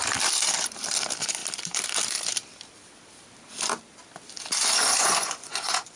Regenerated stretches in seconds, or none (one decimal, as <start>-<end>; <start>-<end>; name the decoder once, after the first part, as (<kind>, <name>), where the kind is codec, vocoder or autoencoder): 4.8-6.0 (vocoder, Vocos)